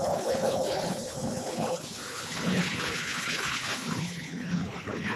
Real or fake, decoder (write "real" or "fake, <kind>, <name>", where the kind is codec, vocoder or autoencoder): fake, codec, HILCodec